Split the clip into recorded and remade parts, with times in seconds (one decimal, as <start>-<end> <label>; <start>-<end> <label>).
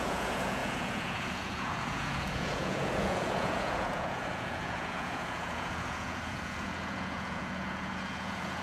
0.0-8.6 remade